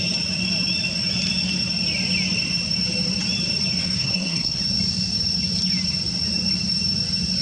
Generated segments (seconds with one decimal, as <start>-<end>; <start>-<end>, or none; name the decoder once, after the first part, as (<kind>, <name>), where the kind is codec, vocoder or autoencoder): 3.8-4.6 (codec, SNAC)